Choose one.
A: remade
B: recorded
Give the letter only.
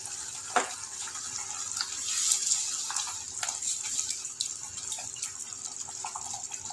B